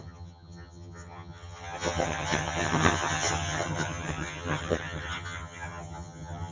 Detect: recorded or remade remade